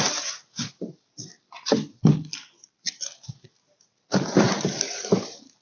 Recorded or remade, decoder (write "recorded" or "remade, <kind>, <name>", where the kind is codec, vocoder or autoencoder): recorded